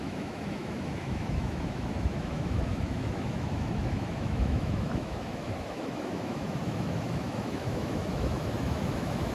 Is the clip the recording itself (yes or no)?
no